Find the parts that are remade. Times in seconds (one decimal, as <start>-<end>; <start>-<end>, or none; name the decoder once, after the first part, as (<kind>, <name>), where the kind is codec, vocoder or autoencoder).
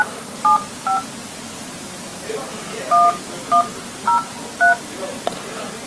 none